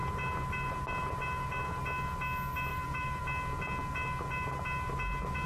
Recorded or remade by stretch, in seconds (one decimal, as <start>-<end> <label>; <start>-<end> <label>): 0.0-2.7 recorded; 2.7-3.2 remade; 3.2-5.5 recorded